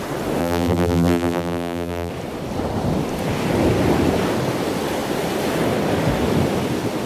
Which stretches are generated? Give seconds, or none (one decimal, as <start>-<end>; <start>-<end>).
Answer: 0.4-2.1